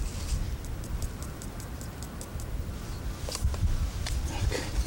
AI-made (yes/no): no